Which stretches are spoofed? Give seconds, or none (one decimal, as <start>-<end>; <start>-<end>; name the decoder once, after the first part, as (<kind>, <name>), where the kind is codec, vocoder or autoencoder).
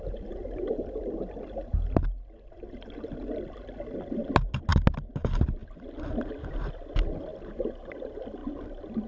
none